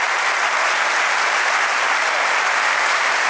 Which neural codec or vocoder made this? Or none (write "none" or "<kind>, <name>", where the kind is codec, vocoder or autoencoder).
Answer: none